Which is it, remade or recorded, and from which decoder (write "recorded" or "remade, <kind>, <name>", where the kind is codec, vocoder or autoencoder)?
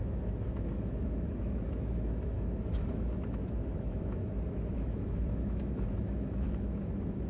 remade, autoencoder, DAC-VAE